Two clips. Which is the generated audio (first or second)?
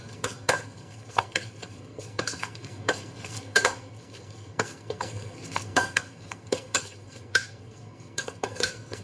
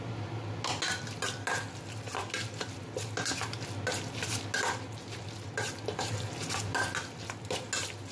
first